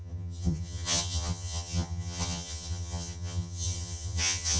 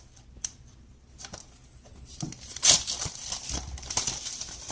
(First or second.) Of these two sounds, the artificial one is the first